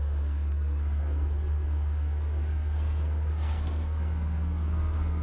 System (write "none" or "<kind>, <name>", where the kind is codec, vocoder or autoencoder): codec, SNAC